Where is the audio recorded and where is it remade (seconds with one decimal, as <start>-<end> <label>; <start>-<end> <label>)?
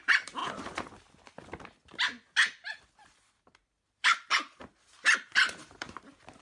0.0-0.4 remade; 0.4-2.8 recorded; 2.8-6.4 remade